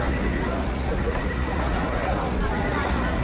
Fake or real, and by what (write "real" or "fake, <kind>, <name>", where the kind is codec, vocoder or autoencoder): fake, vocoder, Vocos